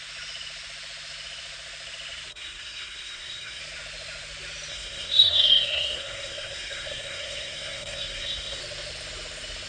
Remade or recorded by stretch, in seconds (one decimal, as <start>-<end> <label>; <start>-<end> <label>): 0.0-2.3 recorded; 2.3-3.6 remade; 3.6-4.7 recorded; 4.7-8.6 remade; 8.6-9.7 recorded